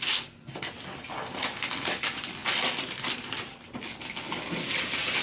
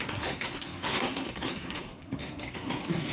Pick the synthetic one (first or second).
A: second